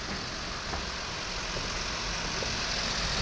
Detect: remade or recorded recorded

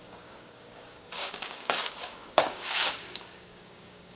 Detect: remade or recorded remade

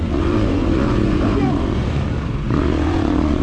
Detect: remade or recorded remade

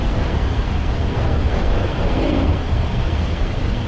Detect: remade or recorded remade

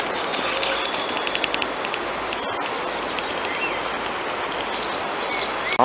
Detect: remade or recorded recorded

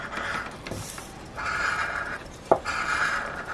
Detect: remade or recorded remade